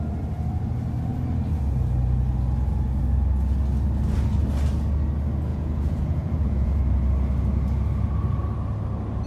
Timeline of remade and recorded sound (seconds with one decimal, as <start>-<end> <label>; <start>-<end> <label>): 0.0-5.5 recorded; 5.5-6.8 remade; 6.8-9.3 recorded